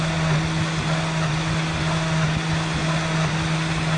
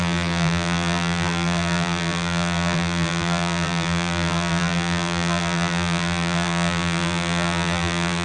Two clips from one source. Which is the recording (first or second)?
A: first